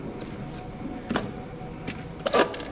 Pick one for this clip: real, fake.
real